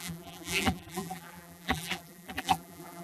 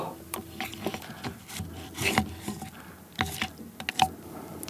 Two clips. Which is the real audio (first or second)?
second